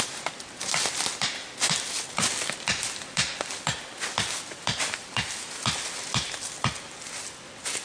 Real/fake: real